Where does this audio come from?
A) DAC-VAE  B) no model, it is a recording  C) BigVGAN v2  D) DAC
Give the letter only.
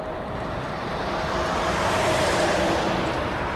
C